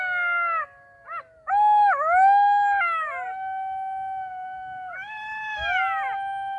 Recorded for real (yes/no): yes